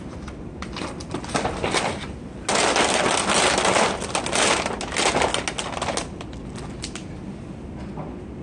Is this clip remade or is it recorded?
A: recorded